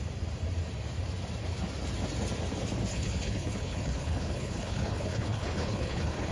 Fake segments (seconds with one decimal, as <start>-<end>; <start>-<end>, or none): 2.9-6.3